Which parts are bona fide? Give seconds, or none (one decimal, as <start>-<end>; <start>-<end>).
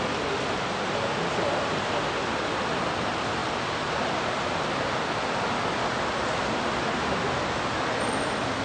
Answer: 0.0-8.6